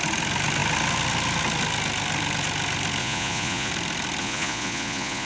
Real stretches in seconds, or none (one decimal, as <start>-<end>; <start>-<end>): 0.0-3.0; 3.7-4.2

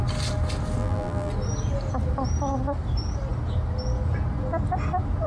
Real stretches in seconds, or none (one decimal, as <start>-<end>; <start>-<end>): 0.0-0.8; 1.3-5.3

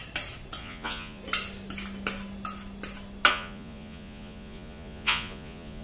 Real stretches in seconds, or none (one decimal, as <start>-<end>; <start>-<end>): 0.0-0.6; 1.2-3.3

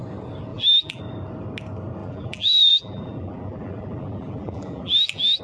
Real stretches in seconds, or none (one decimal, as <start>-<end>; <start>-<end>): 0.0-0.5; 1.0-2.0

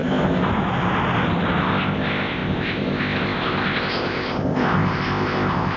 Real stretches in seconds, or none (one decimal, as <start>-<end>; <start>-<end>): 0.5-1.6

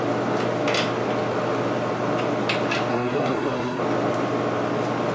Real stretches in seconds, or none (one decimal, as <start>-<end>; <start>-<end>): 0.0-2.9; 3.8-5.1

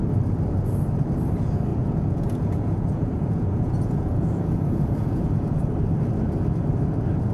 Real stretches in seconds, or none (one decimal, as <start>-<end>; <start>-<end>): 0.0-1.7; 5.6-7.3